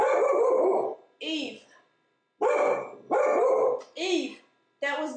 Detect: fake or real real